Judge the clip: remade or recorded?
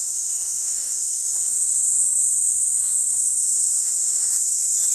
remade